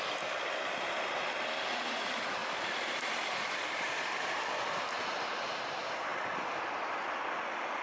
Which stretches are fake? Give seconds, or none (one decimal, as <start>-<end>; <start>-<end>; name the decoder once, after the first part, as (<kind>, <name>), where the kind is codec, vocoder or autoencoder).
2.4-3.1 (vocoder, BigVGAN v2)